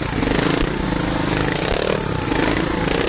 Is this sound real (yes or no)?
yes